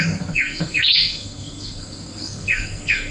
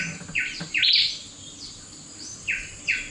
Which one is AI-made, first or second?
first